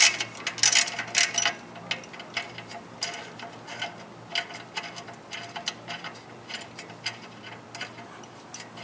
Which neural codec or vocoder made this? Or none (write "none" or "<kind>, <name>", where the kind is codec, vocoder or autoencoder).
none